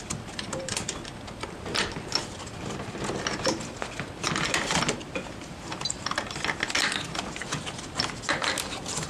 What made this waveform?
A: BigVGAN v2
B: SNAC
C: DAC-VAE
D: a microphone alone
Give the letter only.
A